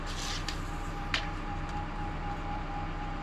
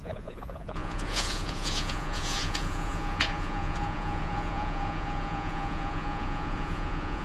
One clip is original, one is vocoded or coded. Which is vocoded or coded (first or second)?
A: second